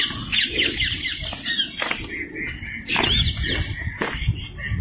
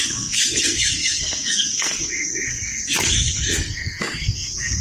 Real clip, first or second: first